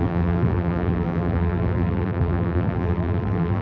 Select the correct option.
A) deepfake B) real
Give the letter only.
A